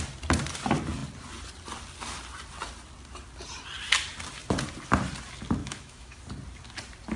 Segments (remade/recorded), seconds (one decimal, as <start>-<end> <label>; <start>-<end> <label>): 0.0-5.6 recorded; 5.6-6.2 remade; 6.2-7.2 recorded

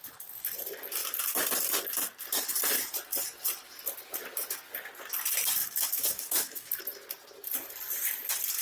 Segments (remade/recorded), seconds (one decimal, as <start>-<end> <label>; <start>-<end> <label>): 0.0-5.6 recorded; 5.6-6.8 remade; 6.8-8.6 recorded

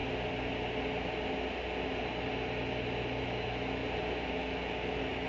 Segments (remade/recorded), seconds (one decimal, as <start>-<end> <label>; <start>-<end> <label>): 0.0-3.2 recorded; 3.2-3.8 remade; 3.8-4.3 recorded; 4.3-5.3 remade